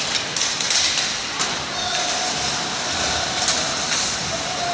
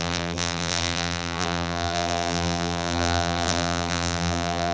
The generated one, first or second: second